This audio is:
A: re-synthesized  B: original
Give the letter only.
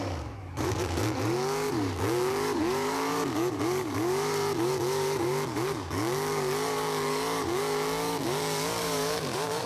A